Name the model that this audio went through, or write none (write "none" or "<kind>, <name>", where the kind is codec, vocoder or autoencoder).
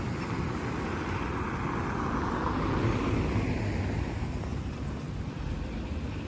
none